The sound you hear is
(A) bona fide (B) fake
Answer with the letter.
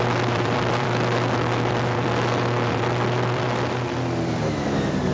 B